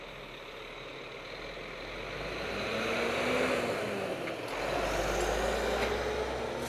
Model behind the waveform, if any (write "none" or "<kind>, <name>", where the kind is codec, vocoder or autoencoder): none